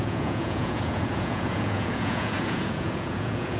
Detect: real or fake fake